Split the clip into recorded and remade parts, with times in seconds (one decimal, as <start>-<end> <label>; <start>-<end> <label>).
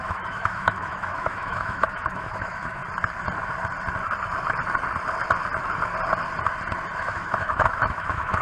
0.0-2.8 remade; 2.8-7.0 recorded; 7.0-8.4 remade